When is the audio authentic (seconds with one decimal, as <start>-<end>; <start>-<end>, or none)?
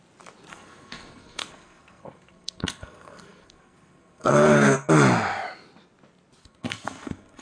0.0-0.5; 4.9-6.4